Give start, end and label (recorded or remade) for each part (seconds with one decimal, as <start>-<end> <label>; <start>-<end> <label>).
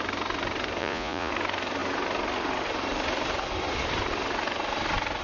0.0-0.8 recorded; 0.8-1.3 remade; 1.3-5.2 recorded